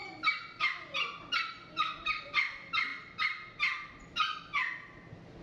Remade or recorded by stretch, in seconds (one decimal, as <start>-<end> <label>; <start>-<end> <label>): 0.0-1.4 recorded; 1.4-2.9 remade; 2.9-5.4 recorded